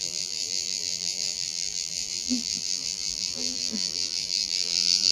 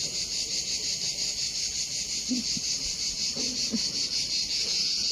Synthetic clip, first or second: first